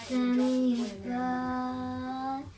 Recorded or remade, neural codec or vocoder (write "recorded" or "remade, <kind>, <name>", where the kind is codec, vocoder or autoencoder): recorded